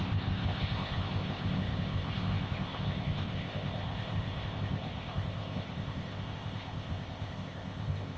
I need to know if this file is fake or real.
fake